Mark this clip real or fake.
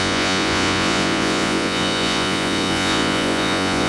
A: fake